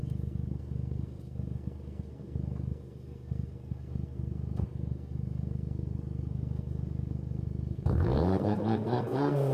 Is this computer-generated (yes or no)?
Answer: yes